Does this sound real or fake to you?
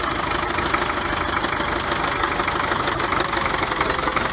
real